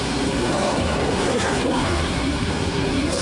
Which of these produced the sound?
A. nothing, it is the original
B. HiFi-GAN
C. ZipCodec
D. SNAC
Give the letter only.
D